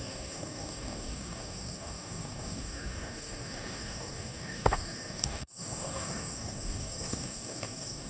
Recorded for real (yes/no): no